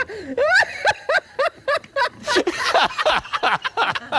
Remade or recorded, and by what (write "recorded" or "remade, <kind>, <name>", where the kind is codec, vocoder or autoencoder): remade, vocoder, BigVGAN v2